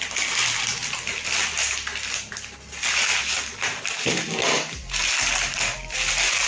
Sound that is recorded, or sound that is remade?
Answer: recorded